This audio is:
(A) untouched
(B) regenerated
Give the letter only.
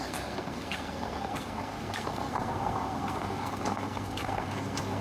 B